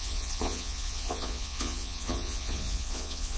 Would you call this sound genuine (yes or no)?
no